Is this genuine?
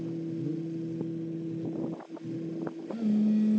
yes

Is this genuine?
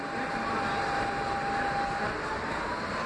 yes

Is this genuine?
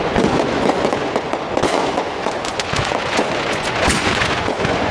no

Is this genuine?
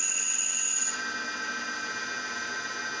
yes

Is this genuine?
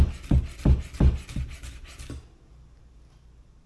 yes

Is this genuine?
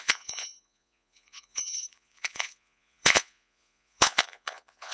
no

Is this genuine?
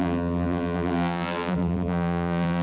no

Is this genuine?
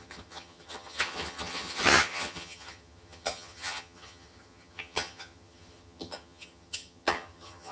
no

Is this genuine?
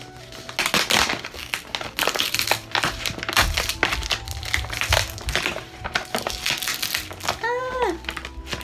yes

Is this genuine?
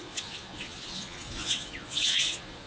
no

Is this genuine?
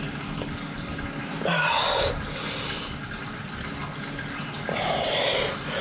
yes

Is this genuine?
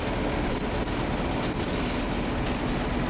yes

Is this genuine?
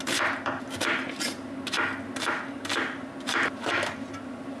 yes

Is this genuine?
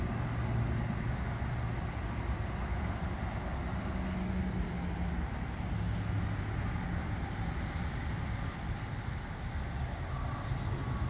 yes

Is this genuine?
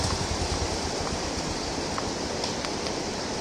no